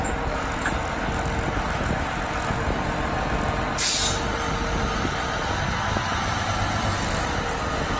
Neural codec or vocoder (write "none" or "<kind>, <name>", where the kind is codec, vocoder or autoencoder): none